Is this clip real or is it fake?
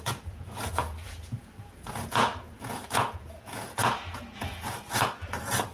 fake